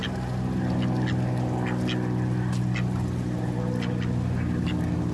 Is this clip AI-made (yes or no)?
no